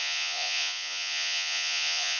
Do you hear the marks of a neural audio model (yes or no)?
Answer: yes